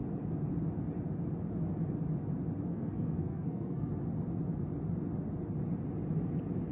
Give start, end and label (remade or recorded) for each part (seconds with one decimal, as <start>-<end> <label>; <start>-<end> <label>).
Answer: 0.0-2.7 recorded; 2.7-3.9 remade; 3.9-6.7 recorded

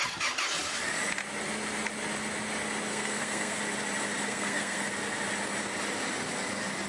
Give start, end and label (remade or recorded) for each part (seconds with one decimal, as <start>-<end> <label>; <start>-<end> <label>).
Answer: 0.0-2.9 recorded; 2.9-3.6 remade; 3.6-4.2 recorded; 4.2-4.9 remade; 4.9-6.9 recorded

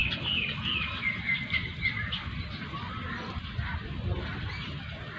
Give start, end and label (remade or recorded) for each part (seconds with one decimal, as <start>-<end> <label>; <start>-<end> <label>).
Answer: 0.0-5.2 recorded

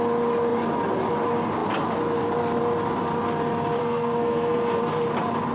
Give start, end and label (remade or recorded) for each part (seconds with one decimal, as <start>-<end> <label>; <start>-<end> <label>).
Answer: 0.0-3.8 recorded; 3.8-4.8 remade; 4.8-5.5 recorded